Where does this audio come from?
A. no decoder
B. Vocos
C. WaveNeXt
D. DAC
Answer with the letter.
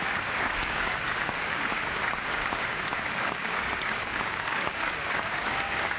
D